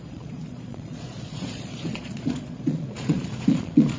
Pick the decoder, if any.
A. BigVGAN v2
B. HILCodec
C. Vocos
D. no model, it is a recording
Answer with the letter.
C